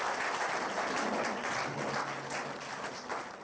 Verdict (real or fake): real